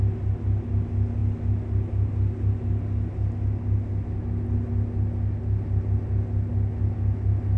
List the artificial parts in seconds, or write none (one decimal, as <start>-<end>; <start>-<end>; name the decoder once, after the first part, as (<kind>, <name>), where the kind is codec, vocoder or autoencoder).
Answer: none